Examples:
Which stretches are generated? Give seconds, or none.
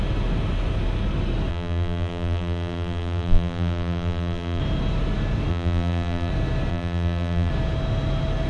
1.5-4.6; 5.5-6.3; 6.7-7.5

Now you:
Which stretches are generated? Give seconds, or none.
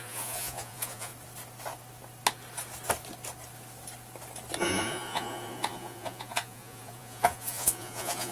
0.0-1.1; 4.6-8.3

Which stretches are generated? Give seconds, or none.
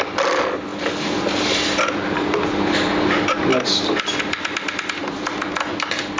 none